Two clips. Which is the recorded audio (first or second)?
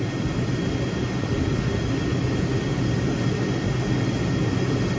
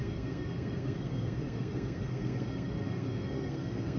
first